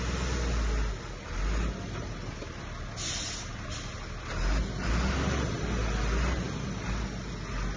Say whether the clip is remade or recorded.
recorded